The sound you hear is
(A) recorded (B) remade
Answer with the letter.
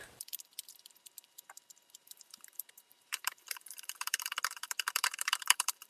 B